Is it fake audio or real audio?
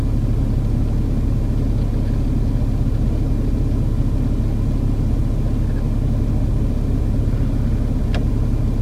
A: real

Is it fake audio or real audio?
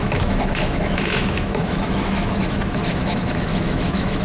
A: fake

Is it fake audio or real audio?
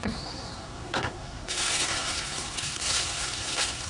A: fake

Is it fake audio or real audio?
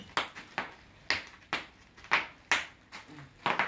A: real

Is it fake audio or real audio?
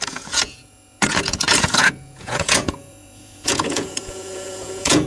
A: fake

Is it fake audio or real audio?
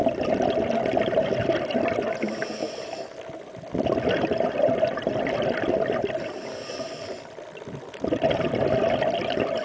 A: real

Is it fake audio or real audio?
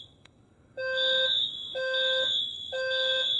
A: fake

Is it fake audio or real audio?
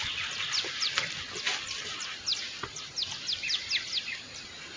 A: real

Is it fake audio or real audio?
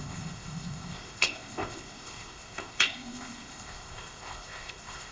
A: fake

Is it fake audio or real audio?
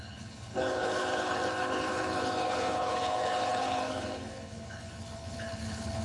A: fake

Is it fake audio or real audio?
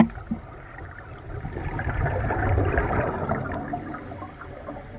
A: real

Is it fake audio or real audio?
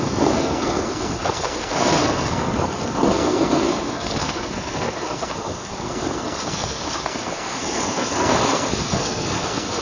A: fake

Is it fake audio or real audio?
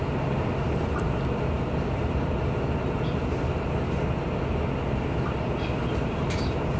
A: real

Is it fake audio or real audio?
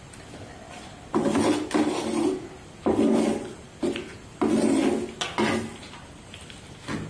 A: real